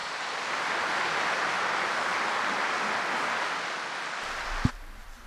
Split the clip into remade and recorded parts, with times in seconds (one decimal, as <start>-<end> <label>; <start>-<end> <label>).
0.0-1.3 remade; 1.3-5.3 recorded